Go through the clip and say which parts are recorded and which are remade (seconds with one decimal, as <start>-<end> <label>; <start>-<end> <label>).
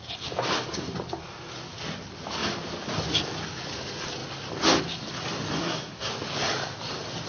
0.0-5.6 recorded; 5.6-6.1 remade; 6.1-7.3 recorded